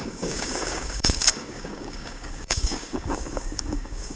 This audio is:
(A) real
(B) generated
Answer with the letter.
B